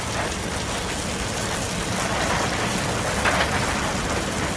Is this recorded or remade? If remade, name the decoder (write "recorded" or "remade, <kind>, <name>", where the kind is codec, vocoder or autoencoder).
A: recorded